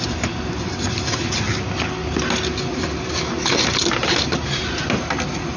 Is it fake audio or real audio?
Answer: real